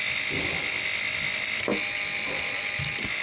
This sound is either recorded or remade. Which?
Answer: recorded